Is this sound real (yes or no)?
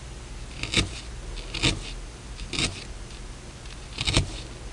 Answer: yes